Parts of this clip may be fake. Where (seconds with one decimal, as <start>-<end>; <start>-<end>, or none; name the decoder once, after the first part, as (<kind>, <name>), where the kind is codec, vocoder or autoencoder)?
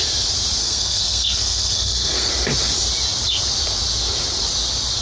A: 0.6-2.3 (codec, SNAC)